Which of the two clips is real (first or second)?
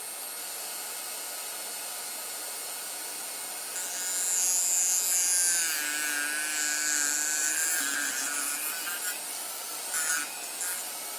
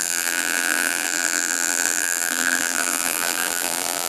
first